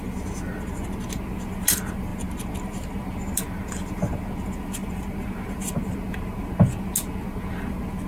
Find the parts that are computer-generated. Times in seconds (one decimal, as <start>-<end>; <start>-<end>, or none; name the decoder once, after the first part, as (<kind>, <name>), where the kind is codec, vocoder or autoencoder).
none